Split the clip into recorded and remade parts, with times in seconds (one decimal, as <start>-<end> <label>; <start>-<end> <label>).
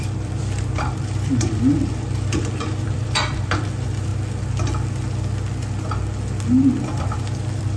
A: 0.0-4.1 remade; 4.1-7.0 recorded; 7.0-7.8 remade